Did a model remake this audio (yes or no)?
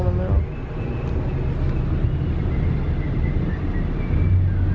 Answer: no